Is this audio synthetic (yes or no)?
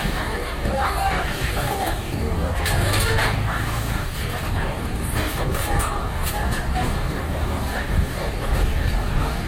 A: yes